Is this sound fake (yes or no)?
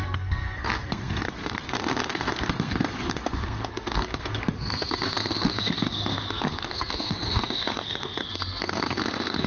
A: yes